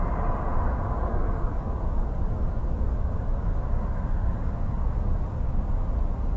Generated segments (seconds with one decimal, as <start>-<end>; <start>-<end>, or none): 1.1-1.7; 2.6-5.6